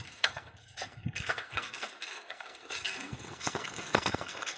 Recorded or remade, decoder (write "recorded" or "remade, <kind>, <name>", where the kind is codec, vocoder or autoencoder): remade, codec, SNAC